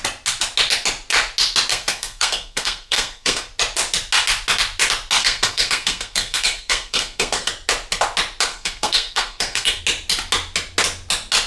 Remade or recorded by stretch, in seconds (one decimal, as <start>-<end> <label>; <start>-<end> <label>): 0.0-1.7 recorded; 1.7-3.5 remade; 3.5-5.2 recorded; 5.2-7.5 remade; 7.5-8.5 recorded; 8.5-9.8 remade; 9.8-11.5 recorded